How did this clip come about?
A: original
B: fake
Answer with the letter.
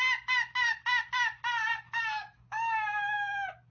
A